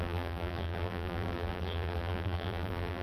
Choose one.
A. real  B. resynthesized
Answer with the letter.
B